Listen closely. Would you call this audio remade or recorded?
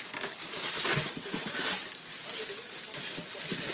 recorded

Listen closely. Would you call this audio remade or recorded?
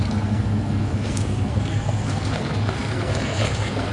remade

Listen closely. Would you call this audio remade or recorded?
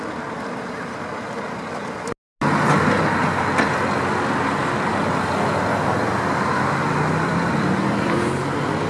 recorded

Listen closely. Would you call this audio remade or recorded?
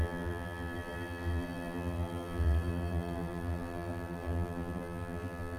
remade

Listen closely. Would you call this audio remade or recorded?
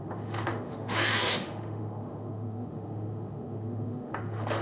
remade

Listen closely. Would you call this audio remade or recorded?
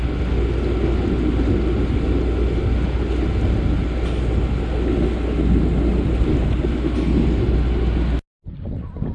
recorded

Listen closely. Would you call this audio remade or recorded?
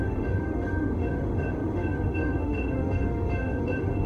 remade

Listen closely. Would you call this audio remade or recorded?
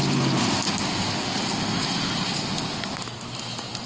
recorded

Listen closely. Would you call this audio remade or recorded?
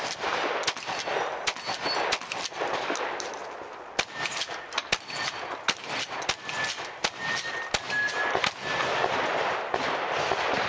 recorded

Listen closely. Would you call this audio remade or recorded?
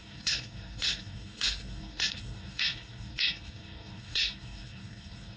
remade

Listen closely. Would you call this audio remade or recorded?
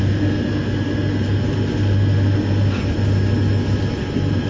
recorded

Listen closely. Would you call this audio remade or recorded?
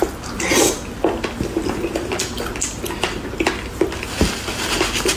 recorded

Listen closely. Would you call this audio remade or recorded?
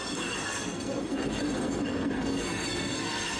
remade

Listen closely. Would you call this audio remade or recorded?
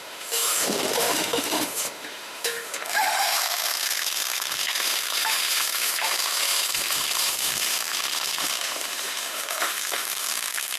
remade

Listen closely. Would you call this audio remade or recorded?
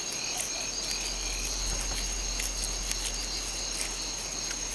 recorded